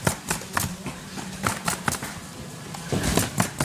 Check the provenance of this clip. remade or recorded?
recorded